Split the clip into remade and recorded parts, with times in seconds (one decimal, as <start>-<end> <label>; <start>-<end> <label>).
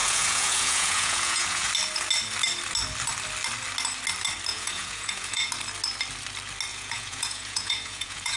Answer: 0.0-1.7 remade; 1.7-4.5 recorded; 4.5-5.5 remade; 5.5-6.7 recorded; 6.7-8.4 remade